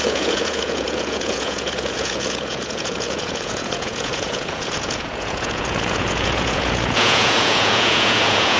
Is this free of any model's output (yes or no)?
no